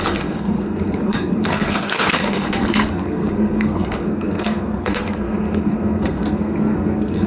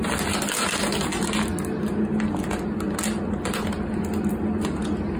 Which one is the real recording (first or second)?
second